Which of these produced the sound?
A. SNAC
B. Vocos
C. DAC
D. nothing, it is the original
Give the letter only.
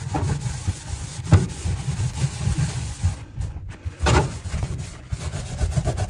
B